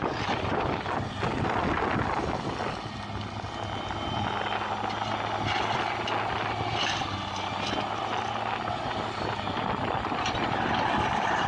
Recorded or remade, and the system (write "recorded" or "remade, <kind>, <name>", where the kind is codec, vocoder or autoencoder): recorded